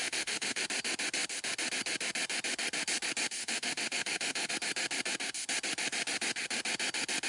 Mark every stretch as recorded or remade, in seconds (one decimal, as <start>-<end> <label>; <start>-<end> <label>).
0.0-0.6 remade; 0.6-3.4 recorded; 3.4-4.5 remade; 4.5-7.3 recorded